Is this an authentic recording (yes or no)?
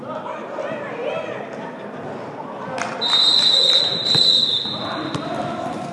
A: yes